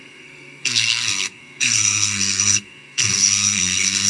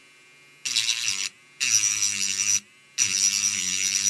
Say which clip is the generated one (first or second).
first